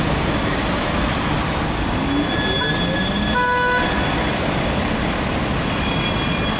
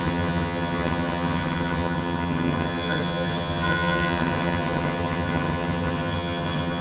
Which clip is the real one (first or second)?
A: first